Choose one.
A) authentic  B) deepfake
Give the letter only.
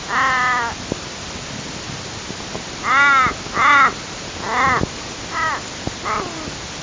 A